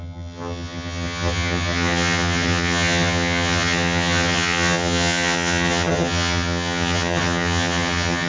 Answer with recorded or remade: remade